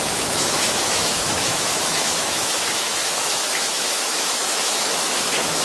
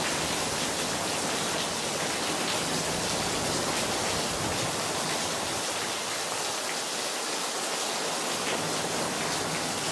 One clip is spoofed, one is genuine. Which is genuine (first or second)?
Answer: second